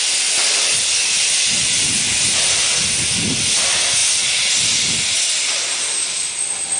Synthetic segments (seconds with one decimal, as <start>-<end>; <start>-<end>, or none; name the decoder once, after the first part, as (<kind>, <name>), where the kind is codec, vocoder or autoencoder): none